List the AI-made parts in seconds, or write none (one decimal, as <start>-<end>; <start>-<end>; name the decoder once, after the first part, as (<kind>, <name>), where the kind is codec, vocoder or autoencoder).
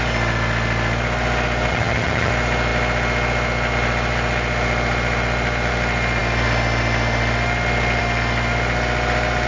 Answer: 1.7-2.3 (vocoder, HiFi-GAN)